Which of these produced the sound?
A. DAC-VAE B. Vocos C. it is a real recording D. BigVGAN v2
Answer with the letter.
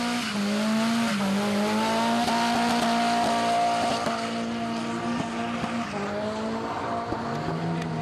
C